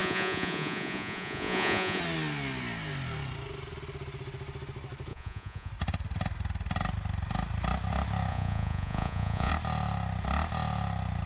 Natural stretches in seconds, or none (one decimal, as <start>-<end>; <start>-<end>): 2.0-5.1; 5.7-8.3; 9.5-11.3